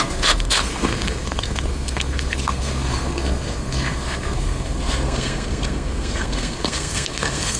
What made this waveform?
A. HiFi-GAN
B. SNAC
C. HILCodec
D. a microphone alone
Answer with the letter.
B